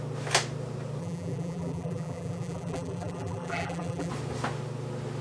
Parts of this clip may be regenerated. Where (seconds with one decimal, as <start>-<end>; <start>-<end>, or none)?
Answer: 1.0-4.1